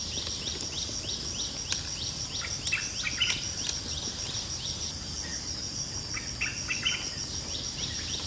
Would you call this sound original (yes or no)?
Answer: yes